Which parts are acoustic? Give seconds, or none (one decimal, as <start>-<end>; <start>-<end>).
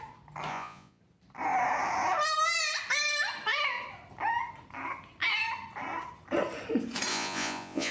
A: 0.0-0.5; 1.0-7.1